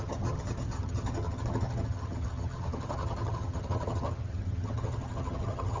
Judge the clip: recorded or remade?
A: remade